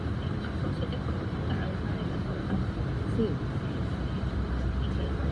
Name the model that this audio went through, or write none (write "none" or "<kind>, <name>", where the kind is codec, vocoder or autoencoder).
vocoder, BigVGAN v2